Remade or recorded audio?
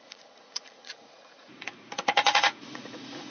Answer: remade